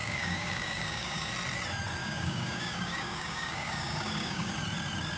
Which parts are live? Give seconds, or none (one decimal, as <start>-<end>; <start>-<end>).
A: 1.3-2.0; 4.5-5.2